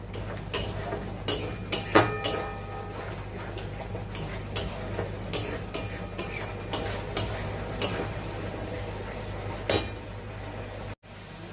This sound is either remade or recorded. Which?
recorded